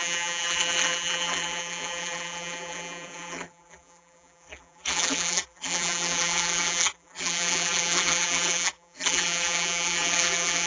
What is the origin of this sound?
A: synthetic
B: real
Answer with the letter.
A